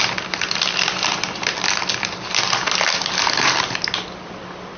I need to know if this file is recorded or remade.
recorded